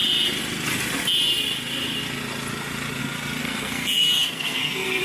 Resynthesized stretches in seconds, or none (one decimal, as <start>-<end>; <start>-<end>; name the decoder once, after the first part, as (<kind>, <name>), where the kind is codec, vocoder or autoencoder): 3.4-5.0 (codec, SNAC)